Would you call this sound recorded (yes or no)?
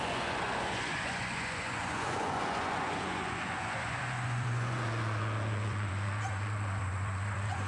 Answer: no